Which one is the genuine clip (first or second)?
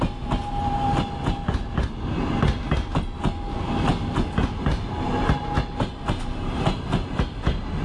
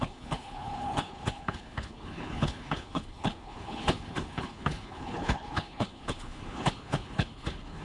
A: first